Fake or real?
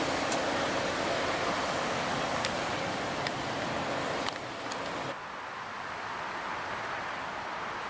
real